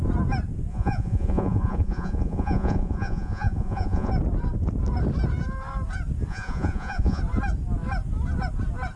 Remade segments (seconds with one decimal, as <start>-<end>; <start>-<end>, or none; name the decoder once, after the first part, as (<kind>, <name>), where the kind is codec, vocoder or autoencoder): 0.7-4.1 (vocoder, Vocos); 6.3-7.2